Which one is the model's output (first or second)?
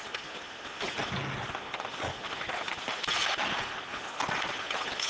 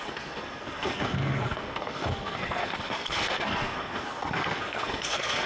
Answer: second